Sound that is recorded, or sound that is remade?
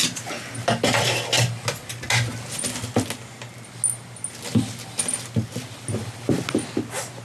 recorded